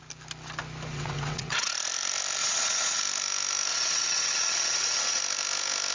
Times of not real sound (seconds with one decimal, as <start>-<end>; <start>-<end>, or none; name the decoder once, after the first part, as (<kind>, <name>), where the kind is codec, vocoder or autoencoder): 0.9-1.7 (vocoder, WaveNeXt); 2.4-3.0; 3.7-5.2